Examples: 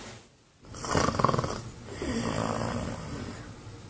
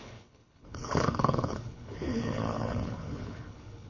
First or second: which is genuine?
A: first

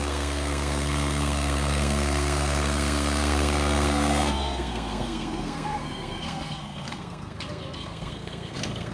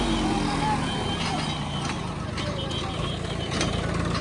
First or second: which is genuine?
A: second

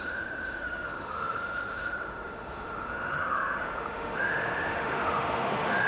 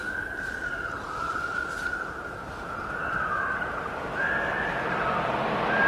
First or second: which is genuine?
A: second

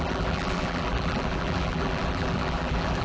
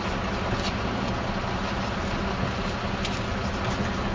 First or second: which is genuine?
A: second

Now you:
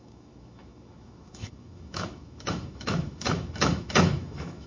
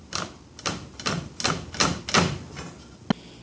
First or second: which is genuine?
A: second